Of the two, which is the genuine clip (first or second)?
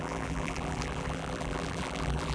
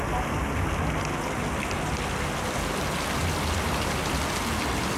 second